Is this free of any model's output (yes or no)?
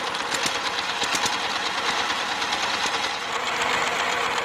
yes